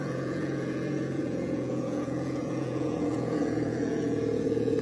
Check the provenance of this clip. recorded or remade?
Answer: remade